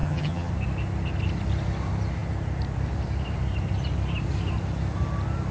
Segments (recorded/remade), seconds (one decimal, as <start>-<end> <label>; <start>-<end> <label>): 0.0-0.5 remade; 0.5-5.5 recorded